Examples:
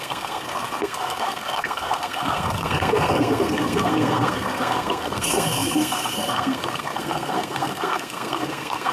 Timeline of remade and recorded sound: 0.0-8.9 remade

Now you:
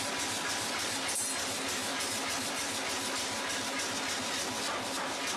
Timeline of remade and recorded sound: 0.0-5.4 recorded

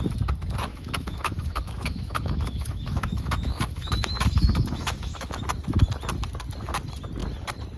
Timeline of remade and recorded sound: 0.0-0.7 recorded; 0.7-5.4 remade; 5.4-7.8 recorded

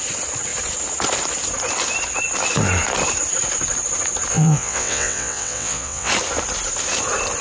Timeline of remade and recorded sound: 0.0-4.3 recorded; 4.3-6.1 remade; 6.1-7.4 recorded

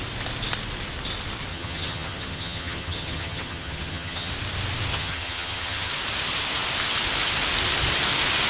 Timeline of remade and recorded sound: 0.0-1.5 recorded; 1.5-4.3 remade; 4.3-4.9 recorded; 4.9-5.9 remade; 5.9-8.5 recorded

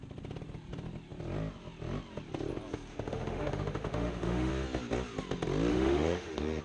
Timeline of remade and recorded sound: 0.0-2.9 recorded; 2.9-4.5 remade; 4.5-5.7 recorded; 5.7-6.6 remade

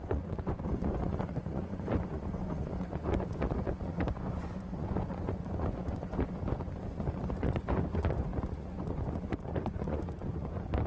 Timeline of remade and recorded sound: 0.0-10.9 remade